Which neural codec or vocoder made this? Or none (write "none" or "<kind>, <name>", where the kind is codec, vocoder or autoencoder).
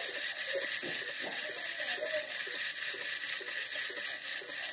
none